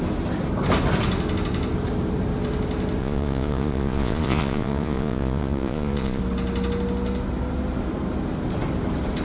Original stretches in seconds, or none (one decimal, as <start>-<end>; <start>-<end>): 0.0-3.0; 6.2-9.2